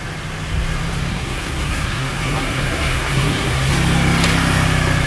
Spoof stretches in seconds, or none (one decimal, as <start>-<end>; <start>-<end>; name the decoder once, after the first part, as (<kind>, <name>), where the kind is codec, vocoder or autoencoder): 1.1-3.7 (codec, SNAC)